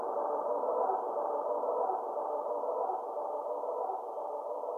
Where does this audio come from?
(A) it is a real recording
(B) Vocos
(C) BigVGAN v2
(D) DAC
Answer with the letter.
C